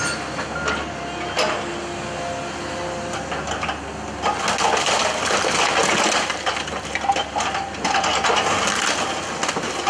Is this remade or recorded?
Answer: recorded